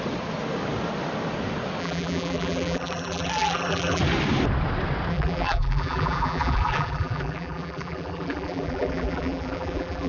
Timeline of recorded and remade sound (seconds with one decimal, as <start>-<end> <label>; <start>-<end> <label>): 0.0-1.8 recorded; 1.8-4.0 remade; 4.0-5.1 recorded; 5.1-10.1 remade